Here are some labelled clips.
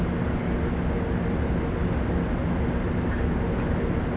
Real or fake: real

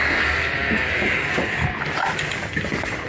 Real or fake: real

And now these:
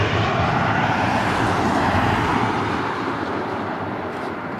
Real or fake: fake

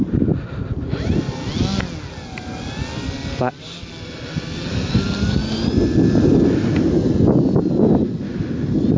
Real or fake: real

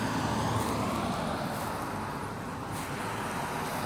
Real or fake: real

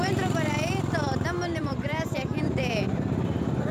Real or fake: fake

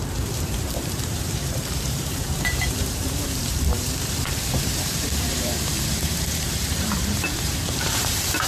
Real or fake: fake